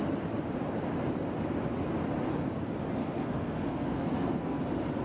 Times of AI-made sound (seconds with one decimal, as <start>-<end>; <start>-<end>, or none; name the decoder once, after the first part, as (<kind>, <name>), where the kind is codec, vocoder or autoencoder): 3.0-4.6 (codec, SNAC)